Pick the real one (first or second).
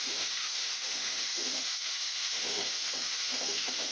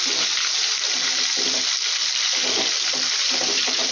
second